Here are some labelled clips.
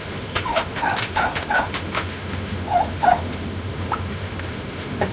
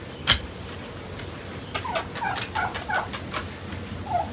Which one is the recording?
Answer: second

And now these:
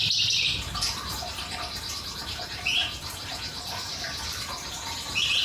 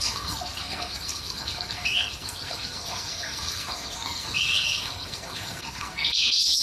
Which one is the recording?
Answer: first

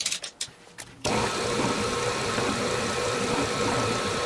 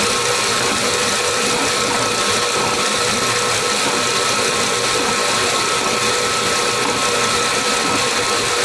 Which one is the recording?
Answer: second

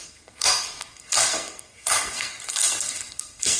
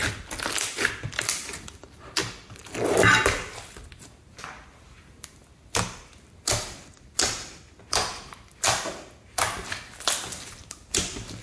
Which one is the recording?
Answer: second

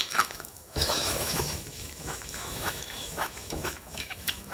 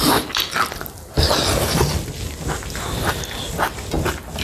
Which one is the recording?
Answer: second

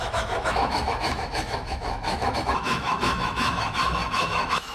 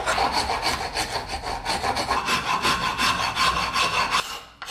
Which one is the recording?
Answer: second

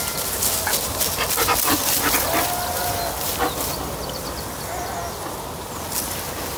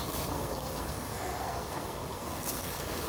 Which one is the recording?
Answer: first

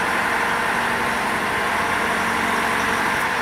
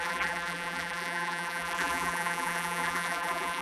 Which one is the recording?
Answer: first